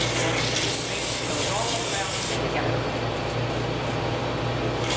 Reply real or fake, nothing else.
real